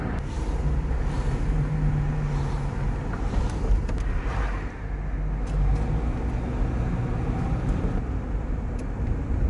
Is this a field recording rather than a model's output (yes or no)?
yes